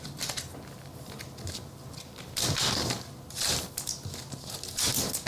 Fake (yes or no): no